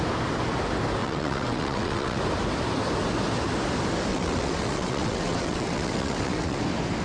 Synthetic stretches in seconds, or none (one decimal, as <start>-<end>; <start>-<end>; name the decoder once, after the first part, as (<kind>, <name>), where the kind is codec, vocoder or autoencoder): 1.0-2.2 (vocoder, WaveNeXt); 4.1-6.6